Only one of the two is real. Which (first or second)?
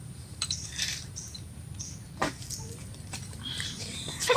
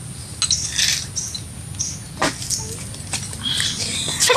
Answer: second